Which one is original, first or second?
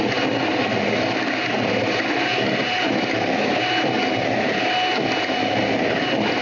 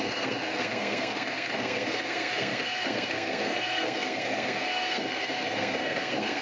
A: first